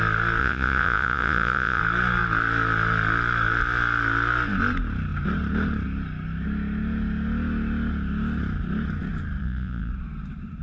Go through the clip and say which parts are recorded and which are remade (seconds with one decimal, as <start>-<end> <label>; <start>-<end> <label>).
0.0-0.4 recorded; 0.4-1.8 remade; 1.8-9.4 recorded; 9.4-9.9 remade; 9.9-10.6 recorded